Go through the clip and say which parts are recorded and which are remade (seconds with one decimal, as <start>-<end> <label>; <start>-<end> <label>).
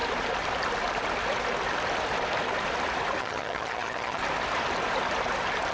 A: 0.0-3.2 recorded; 3.2-4.2 remade; 4.2-5.7 recorded